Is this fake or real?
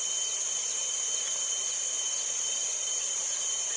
fake